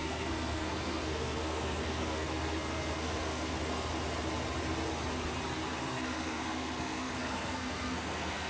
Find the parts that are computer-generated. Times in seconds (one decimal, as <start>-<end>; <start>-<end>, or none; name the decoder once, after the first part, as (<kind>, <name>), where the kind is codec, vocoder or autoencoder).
0.0-3.9 (codec, SNAC); 5.8-8.5